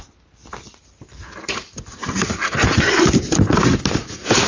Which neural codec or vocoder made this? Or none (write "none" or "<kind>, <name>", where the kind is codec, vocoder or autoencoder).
none